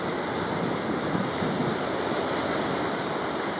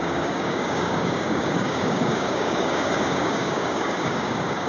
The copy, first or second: second